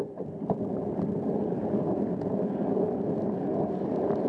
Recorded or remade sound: recorded